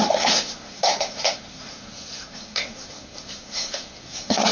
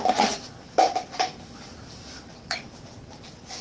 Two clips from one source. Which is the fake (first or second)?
first